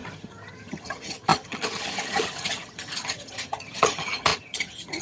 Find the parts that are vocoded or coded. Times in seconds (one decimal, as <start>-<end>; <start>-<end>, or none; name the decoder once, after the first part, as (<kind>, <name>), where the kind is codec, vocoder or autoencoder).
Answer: 0.0-5.0 (vocoder, HiFi-GAN)